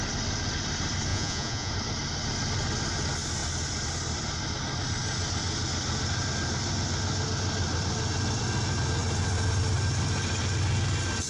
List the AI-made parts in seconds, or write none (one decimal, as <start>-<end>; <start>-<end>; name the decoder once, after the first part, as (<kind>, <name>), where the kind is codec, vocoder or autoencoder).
1.1-1.7 (vocoder, Vocos)